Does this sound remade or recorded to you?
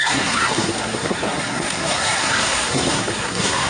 remade